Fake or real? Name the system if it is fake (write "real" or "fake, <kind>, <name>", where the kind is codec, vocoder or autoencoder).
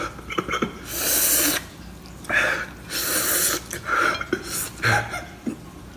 real